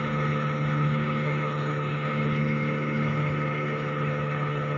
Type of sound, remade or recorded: remade